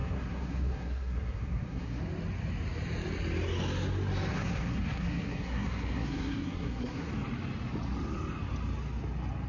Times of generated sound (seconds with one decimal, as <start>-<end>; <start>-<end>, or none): 0.0-2.0; 4.3-7.1